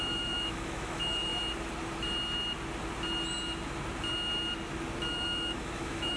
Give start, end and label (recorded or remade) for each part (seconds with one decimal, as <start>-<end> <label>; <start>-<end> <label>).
0.0-1.3 remade; 1.3-5.0 recorded; 5.0-6.2 remade